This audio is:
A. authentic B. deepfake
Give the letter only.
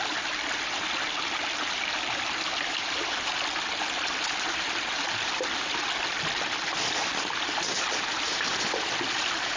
A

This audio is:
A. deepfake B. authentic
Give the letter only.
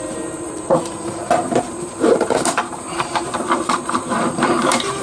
A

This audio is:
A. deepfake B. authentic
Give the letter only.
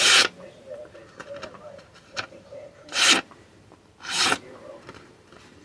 A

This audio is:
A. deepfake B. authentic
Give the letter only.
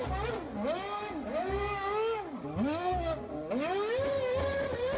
B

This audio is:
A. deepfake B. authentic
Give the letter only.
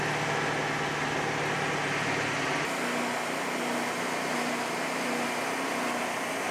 B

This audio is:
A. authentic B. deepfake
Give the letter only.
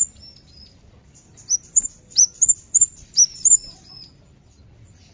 B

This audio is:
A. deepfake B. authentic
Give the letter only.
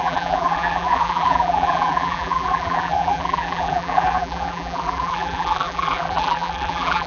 A